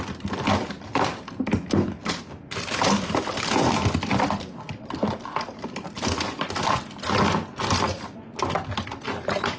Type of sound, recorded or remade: recorded